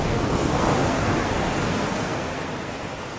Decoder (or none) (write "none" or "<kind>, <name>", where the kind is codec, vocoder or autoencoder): codec, SNAC